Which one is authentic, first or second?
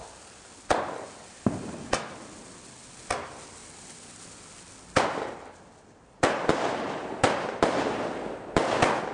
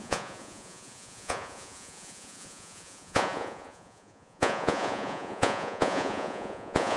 first